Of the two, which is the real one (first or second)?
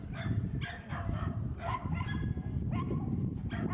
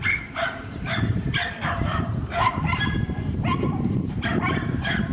first